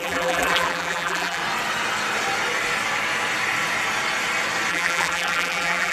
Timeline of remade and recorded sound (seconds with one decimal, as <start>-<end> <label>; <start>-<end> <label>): 0.0-1.4 remade; 1.4-4.7 recorded; 4.7-5.9 remade